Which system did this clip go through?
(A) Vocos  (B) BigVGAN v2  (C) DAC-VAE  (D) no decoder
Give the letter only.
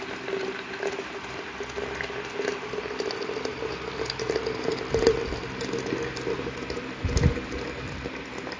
D